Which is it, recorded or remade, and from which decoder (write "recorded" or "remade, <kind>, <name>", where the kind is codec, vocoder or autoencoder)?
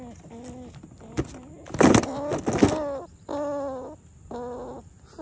recorded